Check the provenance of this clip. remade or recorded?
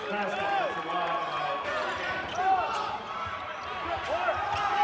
recorded